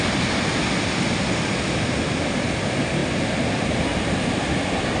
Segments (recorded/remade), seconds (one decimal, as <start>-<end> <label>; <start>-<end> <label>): 0.0-5.0 recorded